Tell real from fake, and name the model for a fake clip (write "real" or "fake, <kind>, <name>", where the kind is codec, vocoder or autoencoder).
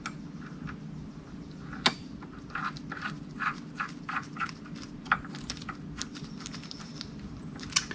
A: real